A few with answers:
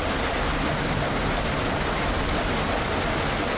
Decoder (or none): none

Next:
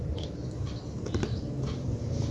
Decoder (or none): none